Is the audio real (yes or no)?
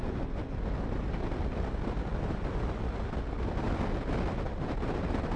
yes